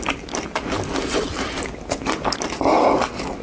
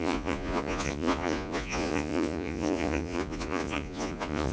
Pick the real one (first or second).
first